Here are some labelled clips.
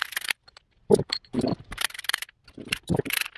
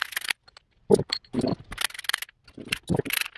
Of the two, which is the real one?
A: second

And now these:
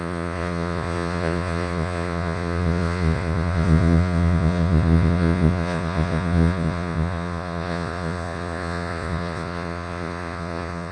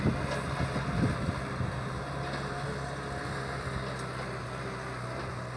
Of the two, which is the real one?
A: second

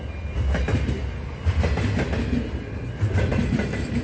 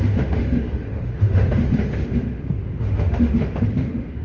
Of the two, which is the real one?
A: first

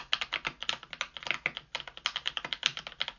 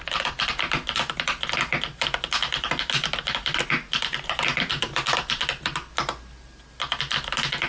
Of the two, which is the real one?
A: first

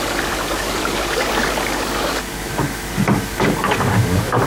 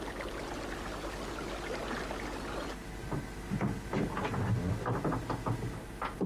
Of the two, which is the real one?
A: second